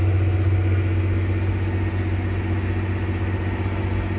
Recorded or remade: recorded